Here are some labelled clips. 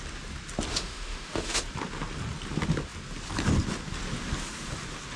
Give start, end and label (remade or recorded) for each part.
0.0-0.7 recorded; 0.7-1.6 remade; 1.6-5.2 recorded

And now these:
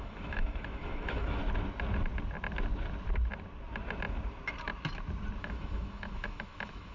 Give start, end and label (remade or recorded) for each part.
0.0-1.4 remade; 1.4-5.4 recorded; 5.4-6.9 remade

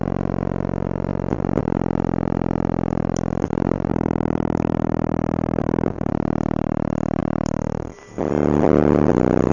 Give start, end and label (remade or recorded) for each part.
0.0-3.9 recorded; 3.9-6.1 remade; 6.1-9.5 recorded

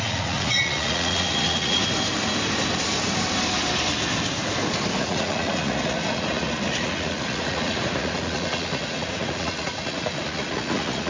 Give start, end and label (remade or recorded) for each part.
0.0-1.8 remade; 1.8-5.0 recorded; 5.0-11.1 remade

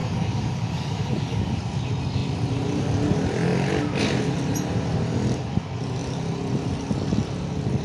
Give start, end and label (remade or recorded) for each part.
0.0-1.6 remade; 1.6-7.8 recorded

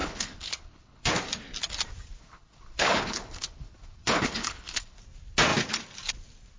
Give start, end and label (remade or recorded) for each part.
0.0-1.1 remade; 1.1-2.2 recorded; 2.2-5.0 remade; 5.0-6.6 recorded